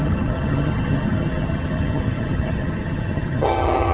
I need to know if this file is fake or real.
fake